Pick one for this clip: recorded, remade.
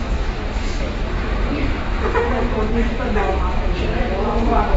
remade